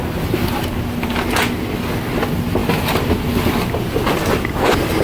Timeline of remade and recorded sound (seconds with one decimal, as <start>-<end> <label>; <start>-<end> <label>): 0.0-2.6 recorded; 2.6-3.1 remade; 3.1-5.0 recorded